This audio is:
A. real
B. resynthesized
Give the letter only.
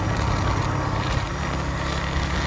A